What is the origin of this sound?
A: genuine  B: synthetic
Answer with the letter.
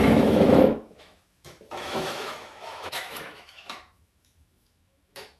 B